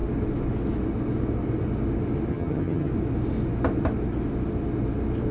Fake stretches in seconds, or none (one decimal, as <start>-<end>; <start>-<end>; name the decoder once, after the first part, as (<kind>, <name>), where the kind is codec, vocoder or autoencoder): 2.3-2.9 (vocoder, HiFi-GAN)